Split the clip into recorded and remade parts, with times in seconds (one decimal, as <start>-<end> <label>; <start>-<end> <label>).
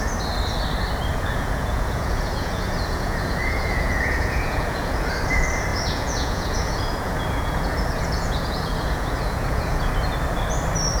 0.0-1.1 recorded; 1.1-5.1 remade; 5.1-5.7 recorded; 5.7-9.9 remade; 9.9-11.0 recorded